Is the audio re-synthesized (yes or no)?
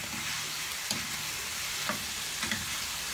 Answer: no